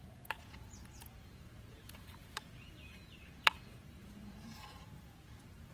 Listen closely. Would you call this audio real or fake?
fake